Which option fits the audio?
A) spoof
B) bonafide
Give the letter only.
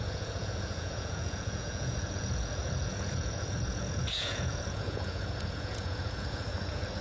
A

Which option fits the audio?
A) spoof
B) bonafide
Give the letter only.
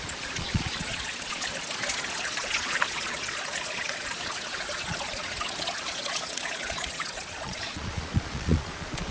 A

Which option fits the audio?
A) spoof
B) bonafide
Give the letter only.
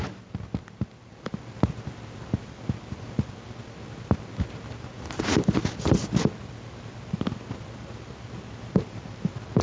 B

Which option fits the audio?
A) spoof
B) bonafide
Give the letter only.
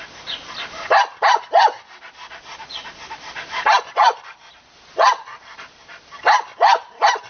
B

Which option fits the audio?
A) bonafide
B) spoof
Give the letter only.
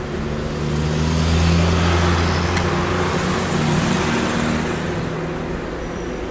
A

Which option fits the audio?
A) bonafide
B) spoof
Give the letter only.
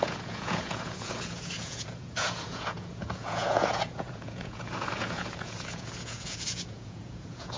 B